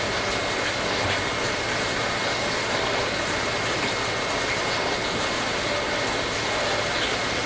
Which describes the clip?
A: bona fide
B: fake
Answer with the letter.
A